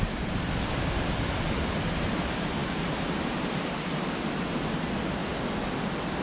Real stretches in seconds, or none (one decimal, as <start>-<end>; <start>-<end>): 5.2-6.2